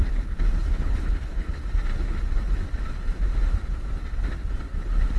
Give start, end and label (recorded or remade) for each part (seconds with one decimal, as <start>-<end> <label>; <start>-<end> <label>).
0.0-0.6 recorded; 0.6-1.5 remade; 1.5-5.2 recorded